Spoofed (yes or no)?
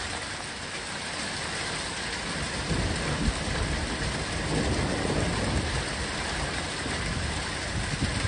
no